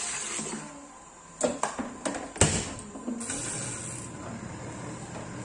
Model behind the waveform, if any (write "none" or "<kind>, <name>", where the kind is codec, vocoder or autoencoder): none